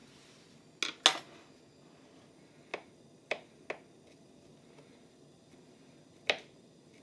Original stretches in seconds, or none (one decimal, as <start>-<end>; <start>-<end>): 0.0-7.0